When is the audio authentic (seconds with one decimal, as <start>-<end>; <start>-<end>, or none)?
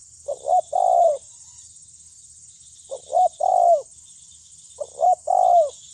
0.0-5.9